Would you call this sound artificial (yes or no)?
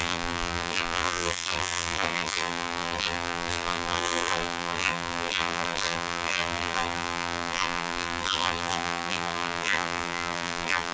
yes